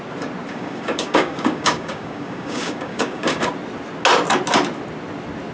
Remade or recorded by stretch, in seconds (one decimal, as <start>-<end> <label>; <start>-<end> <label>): 0.0-0.5 recorded; 0.5-3.5 remade; 3.5-5.5 recorded